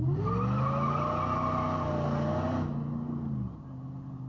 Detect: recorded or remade recorded